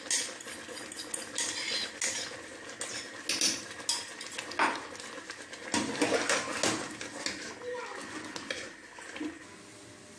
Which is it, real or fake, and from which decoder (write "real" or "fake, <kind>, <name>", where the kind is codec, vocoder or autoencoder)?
real